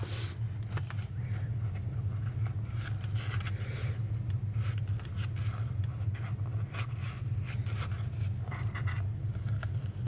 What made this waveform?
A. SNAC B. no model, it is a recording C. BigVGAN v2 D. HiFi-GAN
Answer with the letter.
B